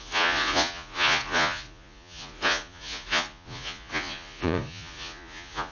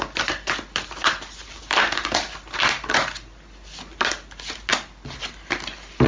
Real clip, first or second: second